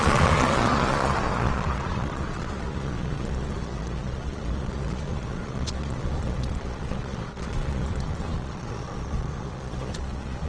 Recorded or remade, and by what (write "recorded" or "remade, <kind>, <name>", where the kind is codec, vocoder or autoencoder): remade, vocoder, Vocos